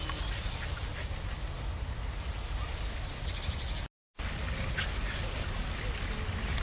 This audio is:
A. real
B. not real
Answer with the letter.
A